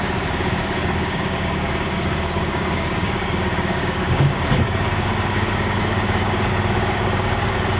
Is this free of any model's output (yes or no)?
no